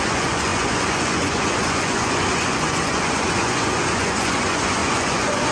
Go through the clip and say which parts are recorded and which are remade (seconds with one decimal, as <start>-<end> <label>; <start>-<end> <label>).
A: 0.0-5.5 remade